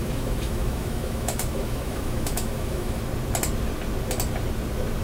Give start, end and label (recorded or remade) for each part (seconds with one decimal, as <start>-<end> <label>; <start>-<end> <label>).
0.0-3.0 remade; 3.0-5.0 recorded